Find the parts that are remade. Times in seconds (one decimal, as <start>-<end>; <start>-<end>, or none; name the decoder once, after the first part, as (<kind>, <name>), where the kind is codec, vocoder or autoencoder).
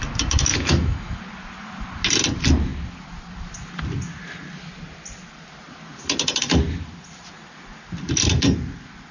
0.5-1.2 (autoencoder, DAC-VAE)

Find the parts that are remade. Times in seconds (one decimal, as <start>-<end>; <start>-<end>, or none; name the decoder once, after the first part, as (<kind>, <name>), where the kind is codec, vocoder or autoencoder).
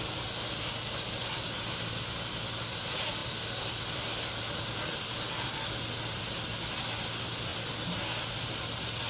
none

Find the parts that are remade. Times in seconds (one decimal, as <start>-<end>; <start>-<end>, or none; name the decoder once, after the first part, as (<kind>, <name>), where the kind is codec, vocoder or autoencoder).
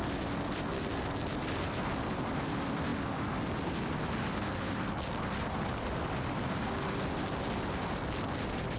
none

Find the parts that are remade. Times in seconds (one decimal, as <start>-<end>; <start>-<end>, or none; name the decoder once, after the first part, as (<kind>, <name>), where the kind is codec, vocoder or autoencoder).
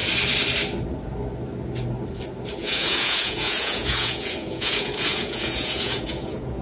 2.6-6.6 (vocoder, Vocos)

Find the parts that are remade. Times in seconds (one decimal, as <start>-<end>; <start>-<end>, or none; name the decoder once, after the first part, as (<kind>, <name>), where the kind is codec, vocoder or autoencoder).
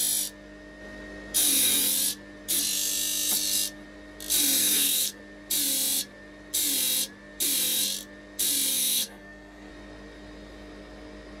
4.6-5.2 (codec, SNAC); 8.7-9.7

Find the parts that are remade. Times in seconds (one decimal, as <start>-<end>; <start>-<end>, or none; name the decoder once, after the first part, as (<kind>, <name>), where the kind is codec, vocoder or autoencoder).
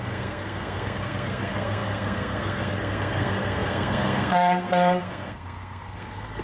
0.0-6.4 (codec, SNAC)